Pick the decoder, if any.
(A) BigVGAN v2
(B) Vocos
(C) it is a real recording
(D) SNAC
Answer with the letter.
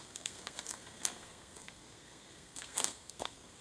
D